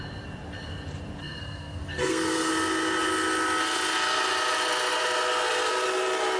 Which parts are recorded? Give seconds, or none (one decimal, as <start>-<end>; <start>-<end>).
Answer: 0.0-1.2; 2.5-6.4